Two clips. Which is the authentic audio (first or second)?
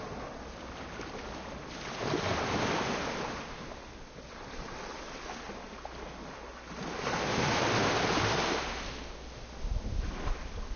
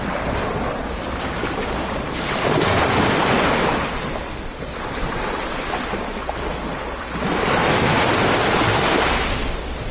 first